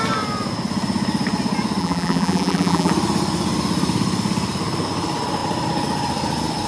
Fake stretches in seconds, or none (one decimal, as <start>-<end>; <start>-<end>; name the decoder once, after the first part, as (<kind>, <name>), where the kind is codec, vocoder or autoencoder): 1.8-2.9 (vocoder, BigVGAN v2)